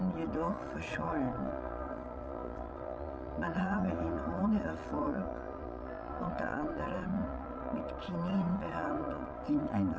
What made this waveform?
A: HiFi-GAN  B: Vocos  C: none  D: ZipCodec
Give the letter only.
B